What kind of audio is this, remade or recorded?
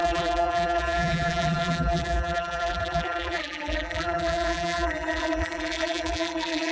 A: remade